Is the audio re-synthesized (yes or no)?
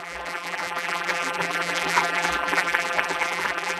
yes